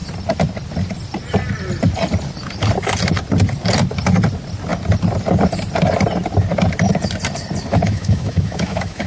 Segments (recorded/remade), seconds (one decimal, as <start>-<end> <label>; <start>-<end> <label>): 0.0-7.7 recorded; 7.7-9.1 remade